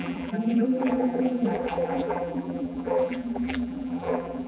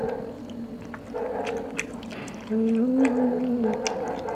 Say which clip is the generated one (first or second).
first